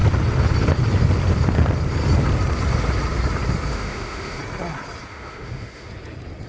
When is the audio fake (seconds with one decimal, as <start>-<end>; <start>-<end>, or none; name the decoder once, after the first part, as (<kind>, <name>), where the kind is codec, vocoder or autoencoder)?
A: 3.7-4.4 (autoencoder, DAC-VAE); 5.1-5.9